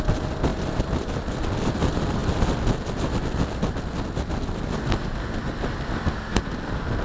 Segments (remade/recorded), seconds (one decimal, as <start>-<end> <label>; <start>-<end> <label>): 0.0-7.0 recorded